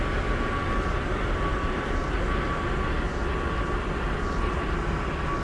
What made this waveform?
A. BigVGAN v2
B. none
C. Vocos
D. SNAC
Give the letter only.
B